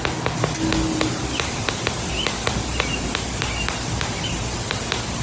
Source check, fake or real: real